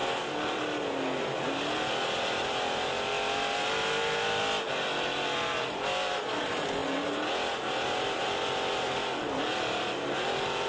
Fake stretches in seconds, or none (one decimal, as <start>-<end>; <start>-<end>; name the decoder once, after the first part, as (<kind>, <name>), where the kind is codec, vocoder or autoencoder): none